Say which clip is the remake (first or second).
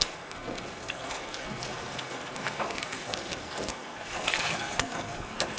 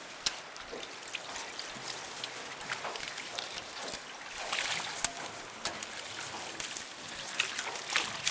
first